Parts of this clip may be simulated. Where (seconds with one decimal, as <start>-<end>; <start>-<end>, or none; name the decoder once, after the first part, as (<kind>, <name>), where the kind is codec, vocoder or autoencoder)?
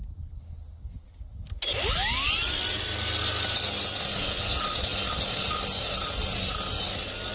none